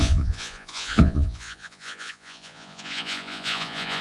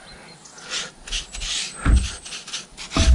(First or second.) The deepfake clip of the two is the first